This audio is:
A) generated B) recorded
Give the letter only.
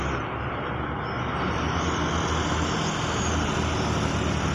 B